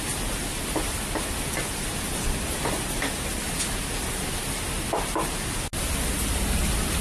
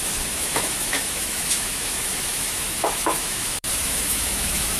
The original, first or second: first